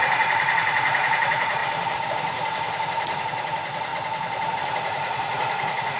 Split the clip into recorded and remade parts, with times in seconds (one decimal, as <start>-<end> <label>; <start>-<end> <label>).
0.0-1.6 remade; 1.6-2.1 recorded; 2.1-3.9 remade; 3.9-4.5 recorded; 4.5-6.0 remade